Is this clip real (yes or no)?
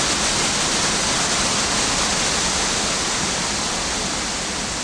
yes